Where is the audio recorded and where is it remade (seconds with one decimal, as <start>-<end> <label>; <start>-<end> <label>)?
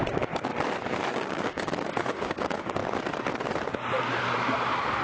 0.0-0.5 remade; 0.5-1.1 recorded; 1.1-2.8 remade; 2.8-5.0 recorded